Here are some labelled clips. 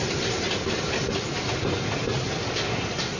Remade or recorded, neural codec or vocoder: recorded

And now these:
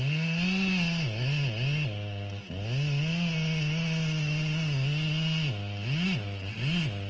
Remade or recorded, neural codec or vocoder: recorded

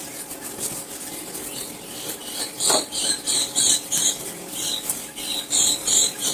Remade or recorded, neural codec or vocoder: remade, vocoder, BigVGAN v2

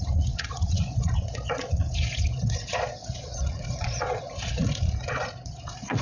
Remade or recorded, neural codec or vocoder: remade, vocoder, Vocos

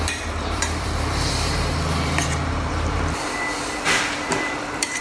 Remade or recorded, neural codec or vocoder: remade, vocoder, BigVGAN v2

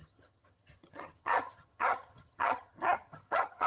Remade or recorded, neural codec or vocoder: remade, vocoder, HiFi-GAN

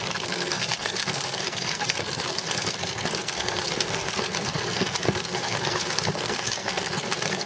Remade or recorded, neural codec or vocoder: remade, codec, SNAC